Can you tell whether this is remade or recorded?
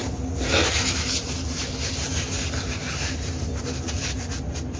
recorded